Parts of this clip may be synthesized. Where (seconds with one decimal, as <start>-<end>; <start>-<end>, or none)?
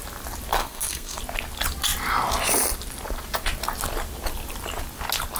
0.6-1.2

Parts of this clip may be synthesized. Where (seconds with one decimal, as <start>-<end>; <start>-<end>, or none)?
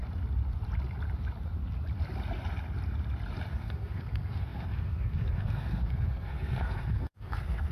3.5-7.7